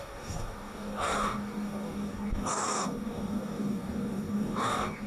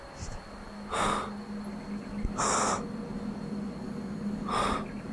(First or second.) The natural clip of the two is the second